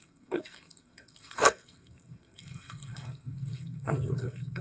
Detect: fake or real fake